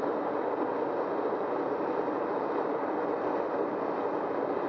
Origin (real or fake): real